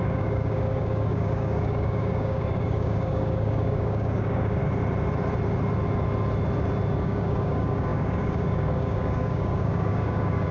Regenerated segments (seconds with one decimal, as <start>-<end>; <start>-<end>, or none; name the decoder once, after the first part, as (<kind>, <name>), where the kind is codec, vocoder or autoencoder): 0.0-4.6 (codec, DAC); 7.0-10.5

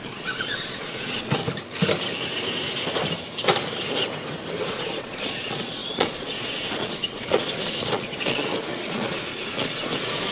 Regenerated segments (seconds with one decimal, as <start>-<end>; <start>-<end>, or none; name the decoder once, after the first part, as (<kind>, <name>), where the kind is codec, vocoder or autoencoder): 0.0-1.4 (vocoder, Vocos); 4.6-10.3

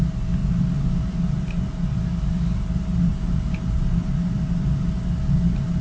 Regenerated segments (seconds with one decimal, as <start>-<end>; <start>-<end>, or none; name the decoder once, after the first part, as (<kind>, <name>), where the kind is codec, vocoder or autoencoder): none

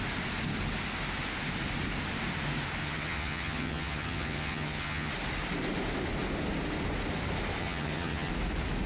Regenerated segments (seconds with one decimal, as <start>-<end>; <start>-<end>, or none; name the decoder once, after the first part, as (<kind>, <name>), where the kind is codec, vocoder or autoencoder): 2.8-5.1 (vocoder, HiFi-GAN); 7.6-8.3